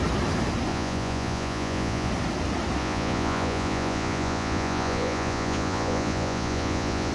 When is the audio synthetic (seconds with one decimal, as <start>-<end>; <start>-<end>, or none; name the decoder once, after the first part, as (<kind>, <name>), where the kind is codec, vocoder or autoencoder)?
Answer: 0.7-2.1 (vocoder, Vocos); 2.8-7.1